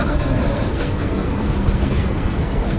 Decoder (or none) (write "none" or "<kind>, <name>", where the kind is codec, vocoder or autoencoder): codec, SNAC